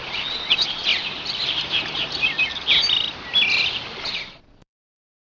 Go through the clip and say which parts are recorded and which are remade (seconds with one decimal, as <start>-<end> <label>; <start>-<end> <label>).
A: 0.0-0.9 remade; 0.9-4.0 recorded; 4.0-5.2 remade